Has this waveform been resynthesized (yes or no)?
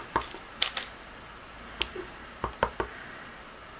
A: no